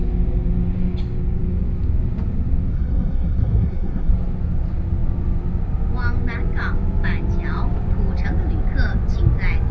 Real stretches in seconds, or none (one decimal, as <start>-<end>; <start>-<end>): 0.0-2.7; 4.1-9.7